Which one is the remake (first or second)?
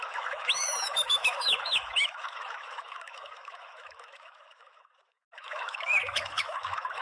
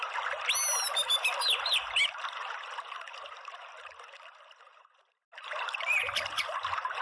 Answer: first